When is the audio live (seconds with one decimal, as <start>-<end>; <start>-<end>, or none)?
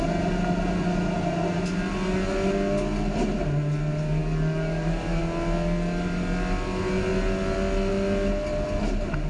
0.0-4.2; 5.2-9.3